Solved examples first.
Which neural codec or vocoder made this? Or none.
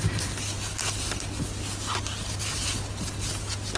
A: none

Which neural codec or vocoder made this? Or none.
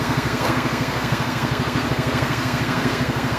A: codec, SNAC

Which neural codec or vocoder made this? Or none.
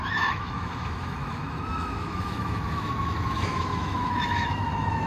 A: autoencoder, DAC-VAE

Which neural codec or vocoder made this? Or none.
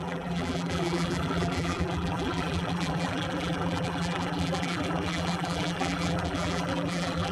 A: vocoder, BigVGAN v2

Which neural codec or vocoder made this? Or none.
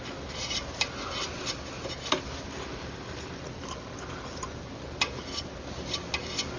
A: none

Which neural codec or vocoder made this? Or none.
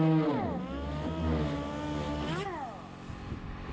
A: none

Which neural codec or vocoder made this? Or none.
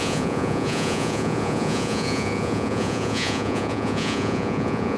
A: vocoder, Vocos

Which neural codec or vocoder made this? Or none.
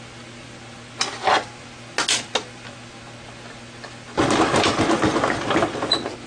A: none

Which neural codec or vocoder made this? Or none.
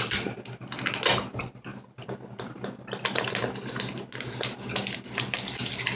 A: none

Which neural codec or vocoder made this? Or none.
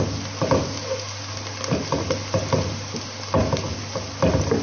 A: none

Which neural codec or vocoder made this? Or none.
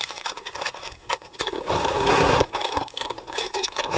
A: codec, SNAC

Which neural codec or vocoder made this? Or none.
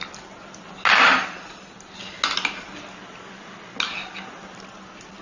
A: none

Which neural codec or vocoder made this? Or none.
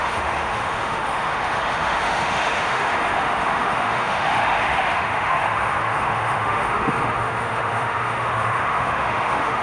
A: autoencoder, DAC-VAE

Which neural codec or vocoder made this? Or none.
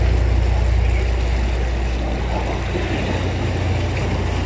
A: none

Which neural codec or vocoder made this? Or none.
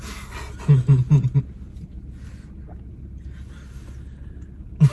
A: none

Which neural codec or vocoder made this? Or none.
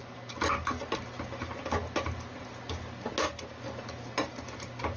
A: none